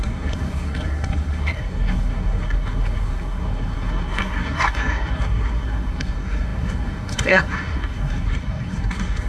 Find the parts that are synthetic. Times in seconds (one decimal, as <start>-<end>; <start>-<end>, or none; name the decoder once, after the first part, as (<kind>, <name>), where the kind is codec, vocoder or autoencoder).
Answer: 0.0-9.3 (codec, SNAC)